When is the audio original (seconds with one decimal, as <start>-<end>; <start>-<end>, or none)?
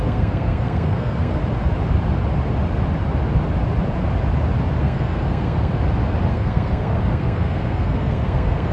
1.4-4.8; 5.7-6.3